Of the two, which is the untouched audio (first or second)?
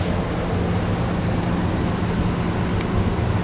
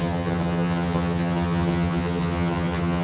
first